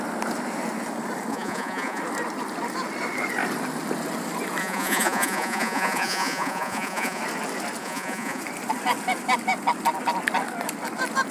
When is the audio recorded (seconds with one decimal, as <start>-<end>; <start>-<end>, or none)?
0.0-1.3; 2.0-4.6; 7.2-7.8; 8.4-11.3